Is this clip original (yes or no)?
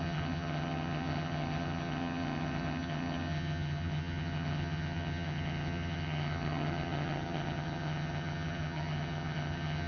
no